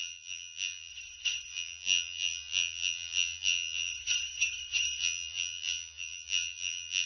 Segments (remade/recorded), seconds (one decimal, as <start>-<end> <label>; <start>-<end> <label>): 0.0-0.9 remade; 0.9-1.5 recorded; 1.5-3.9 remade; 3.9-5.0 recorded; 5.0-7.1 remade